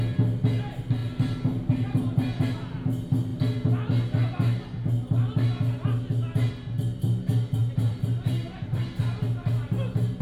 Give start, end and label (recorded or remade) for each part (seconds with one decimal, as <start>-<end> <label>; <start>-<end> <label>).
0.0-7.6 recorded; 7.6-9.0 remade; 9.0-10.2 recorded